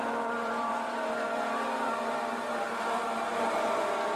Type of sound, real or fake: fake